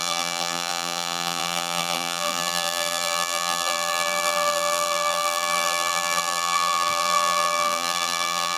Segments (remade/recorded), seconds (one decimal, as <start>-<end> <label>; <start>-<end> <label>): 0.0-8.6 remade